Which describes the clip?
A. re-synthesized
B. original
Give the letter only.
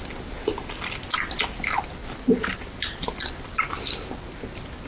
B